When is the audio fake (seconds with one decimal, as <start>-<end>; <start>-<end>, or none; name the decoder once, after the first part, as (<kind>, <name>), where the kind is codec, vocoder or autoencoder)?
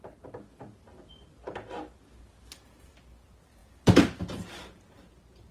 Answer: none